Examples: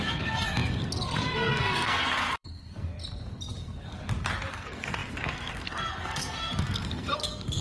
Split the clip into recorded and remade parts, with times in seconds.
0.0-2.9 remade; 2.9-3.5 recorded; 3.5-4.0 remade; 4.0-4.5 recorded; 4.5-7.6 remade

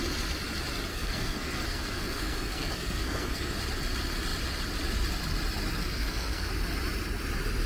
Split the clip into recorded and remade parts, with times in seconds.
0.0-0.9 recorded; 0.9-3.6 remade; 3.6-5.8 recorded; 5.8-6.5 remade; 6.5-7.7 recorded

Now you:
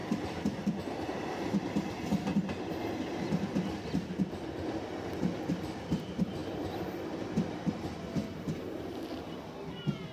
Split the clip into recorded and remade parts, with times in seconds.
0.0-1.2 remade; 1.2-6.4 recorded; 6.4-7.1 remade; 7.1-10.1 recorded

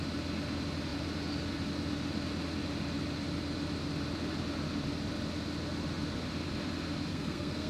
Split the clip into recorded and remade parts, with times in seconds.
0.0-7.1 recorded; 7.1-7.7 remade

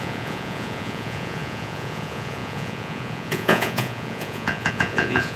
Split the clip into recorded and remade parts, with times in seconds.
0.0-5.4 remade

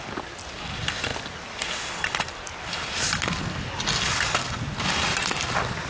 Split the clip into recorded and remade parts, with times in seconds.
0.0-5.9 recorded